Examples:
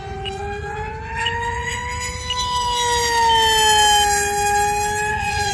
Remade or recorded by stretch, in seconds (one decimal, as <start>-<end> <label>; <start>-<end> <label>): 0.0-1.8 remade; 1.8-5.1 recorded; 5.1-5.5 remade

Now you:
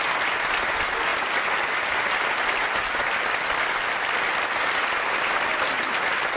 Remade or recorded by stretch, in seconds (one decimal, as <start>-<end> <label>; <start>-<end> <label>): 0.0-6.4 recorded

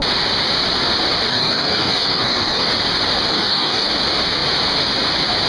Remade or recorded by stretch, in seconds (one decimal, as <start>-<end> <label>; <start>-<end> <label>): 0.0-1.3 recorded; 1.3-2.7 remade; 2.7-3.3 recorded; 3.3-3.9 remade; 3.9-5.5 recorded